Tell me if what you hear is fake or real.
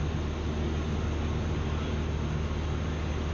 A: real